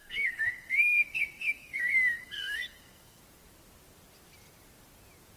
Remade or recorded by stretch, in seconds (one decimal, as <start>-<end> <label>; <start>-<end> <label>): 0.0-3.2 remade; 3.2-5.4 recorded